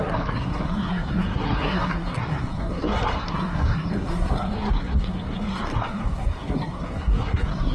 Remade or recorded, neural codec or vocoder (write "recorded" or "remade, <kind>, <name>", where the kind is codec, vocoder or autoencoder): remade, codec, SNAC